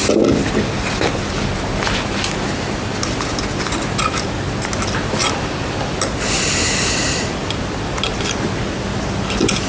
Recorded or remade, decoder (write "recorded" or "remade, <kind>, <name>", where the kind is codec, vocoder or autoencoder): recorded